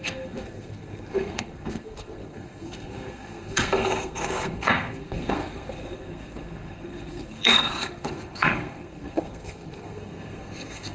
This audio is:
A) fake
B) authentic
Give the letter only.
A